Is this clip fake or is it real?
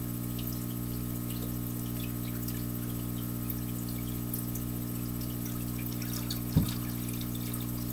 real